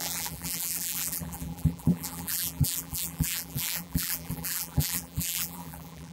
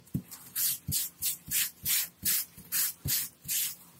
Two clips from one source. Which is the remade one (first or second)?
first